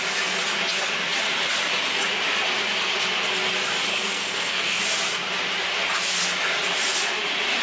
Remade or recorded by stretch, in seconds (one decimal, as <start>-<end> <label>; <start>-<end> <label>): 0.0-3.9 recorded; 3.9-4.8 remade; 4.8-7.6 recorded